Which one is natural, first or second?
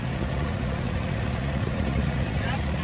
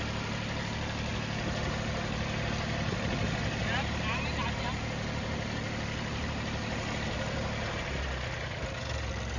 second